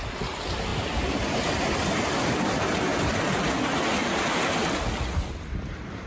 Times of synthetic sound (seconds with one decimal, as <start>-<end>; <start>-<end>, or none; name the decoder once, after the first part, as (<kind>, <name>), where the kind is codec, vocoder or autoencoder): none